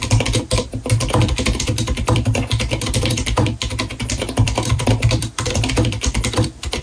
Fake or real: fake